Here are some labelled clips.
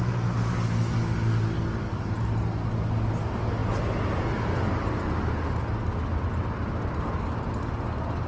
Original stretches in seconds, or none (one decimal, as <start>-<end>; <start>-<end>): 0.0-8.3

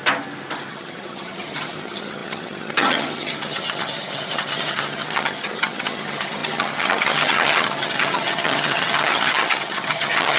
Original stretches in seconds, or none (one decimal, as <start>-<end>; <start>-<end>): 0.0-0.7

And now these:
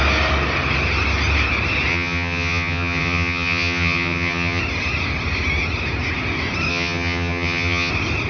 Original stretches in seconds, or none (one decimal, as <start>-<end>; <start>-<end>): 0.0-1.9; 4.6-6.7; 7.9-8.3